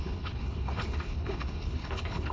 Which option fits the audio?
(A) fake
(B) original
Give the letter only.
A